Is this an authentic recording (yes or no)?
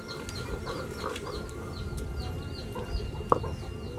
yes